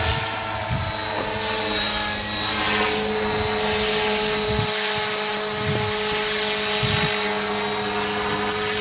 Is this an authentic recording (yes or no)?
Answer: yes